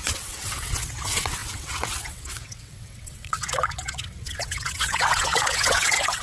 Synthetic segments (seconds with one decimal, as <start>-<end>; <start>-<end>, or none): 0.0-6.2